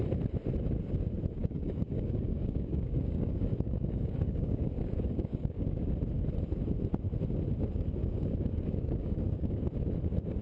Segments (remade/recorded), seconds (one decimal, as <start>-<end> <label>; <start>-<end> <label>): 0.0-1.4 recorded; 1.4-5.8 remade; 5.8-8.0 recorded; 8.0-9.7 remade; 9.7-10.4 recorded